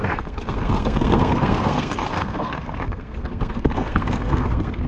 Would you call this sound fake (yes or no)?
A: yes